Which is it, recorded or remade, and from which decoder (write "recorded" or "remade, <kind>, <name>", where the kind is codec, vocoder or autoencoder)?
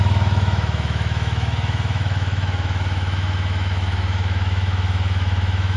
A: remade, autoencoder, DAC-VAE